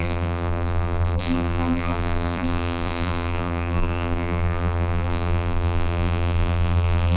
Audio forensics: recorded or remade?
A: remade